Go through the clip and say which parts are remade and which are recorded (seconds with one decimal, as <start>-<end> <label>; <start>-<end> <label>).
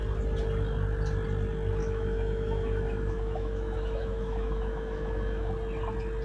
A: 0.0-1.8 recorded; 1.8-5.5 remade; 5.5-6.2 recorded